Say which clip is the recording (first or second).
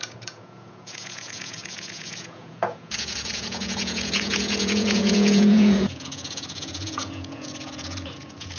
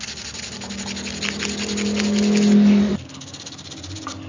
second